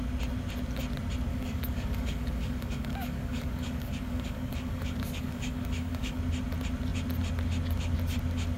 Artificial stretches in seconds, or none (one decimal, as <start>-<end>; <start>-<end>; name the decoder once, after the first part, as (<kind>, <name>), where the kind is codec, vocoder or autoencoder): 1.3-6.2 (codec, DAC)